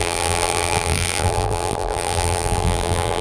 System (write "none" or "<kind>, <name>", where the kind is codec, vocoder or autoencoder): vocoder, BigVGAN v2